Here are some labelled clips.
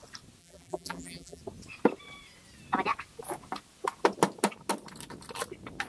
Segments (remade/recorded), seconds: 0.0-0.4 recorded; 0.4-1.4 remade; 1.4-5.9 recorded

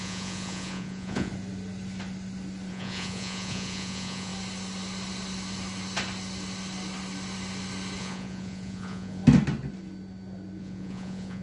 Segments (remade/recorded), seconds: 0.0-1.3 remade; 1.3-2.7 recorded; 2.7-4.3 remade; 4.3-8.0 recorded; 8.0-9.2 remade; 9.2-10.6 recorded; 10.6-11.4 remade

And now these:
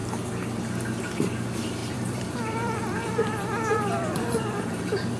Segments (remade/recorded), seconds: 0.0-1.8 recorded; 1.8-5.2 remade

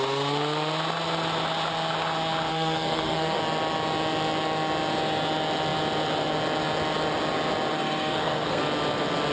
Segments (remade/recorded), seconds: 0.0-2.5 recorded; 2.5-3.4 remade; 3.4-7.7 recorded; 7.7-8.6 remade; 8.6-9.3 recorded

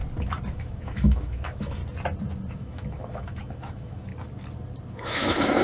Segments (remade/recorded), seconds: 0.0-0.5 recorded; 0.5-1.8 remade; 1.8-2.5 recorded; 2.5-4.1 remade; 4.1-4.9 recorded; 4.9-5.6 remade

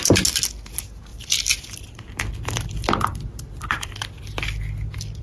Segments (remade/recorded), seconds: 0.0-1.1 recorded; 1.1-4.2 remade; 4.2-5.2 recorded